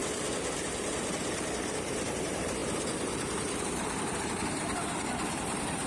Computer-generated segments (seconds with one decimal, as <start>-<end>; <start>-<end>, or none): 0.9-5.9